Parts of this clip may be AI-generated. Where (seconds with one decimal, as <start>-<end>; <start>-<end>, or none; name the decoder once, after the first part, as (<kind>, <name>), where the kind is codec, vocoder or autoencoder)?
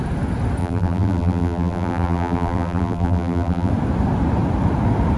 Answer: 0.6-3.7 (vocoder, BigVGAN v2)